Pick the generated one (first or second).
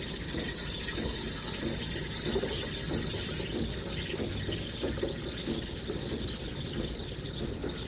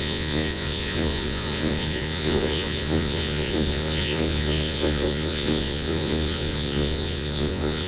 second